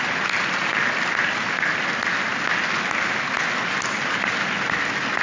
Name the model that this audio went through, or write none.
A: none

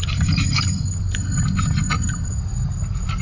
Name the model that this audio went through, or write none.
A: none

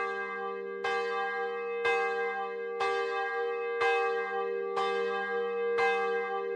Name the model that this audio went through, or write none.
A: none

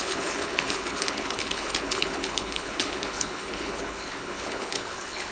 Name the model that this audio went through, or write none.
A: codec, HILCodec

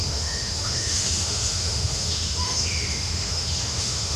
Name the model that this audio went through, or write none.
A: autoencoder, DAC-VAE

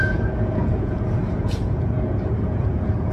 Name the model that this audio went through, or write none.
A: vocoder, Vocos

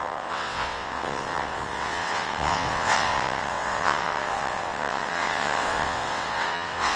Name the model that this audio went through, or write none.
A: vocoder, WaveNeXt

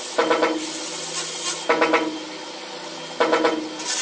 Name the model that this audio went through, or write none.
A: none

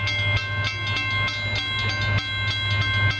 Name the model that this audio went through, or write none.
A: none